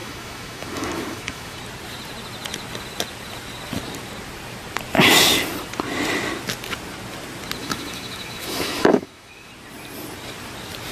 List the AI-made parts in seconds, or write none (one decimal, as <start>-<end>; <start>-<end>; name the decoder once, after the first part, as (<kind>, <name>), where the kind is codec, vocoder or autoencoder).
0.0-1.6 (autoencoder, DAC-VAE); 7.6-9.5